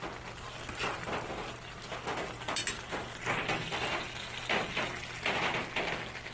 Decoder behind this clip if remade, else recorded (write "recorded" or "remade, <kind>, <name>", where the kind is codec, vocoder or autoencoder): recorded